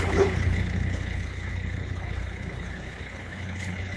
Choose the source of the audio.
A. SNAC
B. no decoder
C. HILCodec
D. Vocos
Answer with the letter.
C